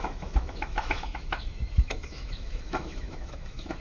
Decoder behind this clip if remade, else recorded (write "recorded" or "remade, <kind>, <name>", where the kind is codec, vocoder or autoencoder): remade, autoencoder, DAC-VAE